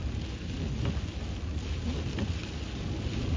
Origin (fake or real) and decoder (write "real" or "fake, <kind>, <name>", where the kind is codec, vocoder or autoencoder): real